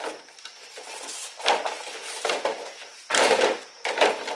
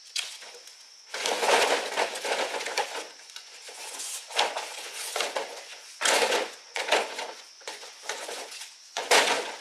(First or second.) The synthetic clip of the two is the second